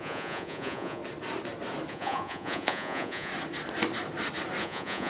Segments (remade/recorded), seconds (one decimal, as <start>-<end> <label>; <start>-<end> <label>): 0.0-1.0 remade; 1.0-1.9 recorded; 1.9-3.3 remade; 3.3-4.6 recorded; 4.6-5.1 remade

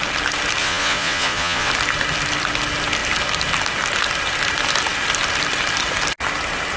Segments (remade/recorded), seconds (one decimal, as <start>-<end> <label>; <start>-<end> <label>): 0.0-0.6 recorded; 0.6-1.7 remade; 1.7-6.8 recorded